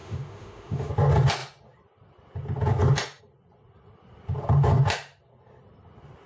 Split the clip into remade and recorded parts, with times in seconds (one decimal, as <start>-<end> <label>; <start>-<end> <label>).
0.0-0.9 remade; 0.9-6.3 recorded